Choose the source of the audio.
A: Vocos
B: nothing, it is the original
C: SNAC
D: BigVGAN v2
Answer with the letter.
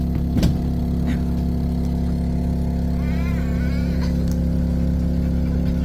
B